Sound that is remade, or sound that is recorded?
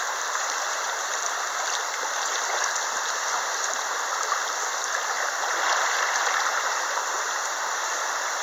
recorded